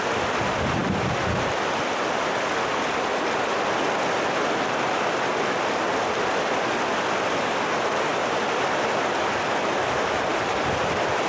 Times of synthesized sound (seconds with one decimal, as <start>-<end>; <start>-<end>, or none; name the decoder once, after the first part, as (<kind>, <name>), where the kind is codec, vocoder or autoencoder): 8.1-9.3 (vocoder, BigVGAN v2)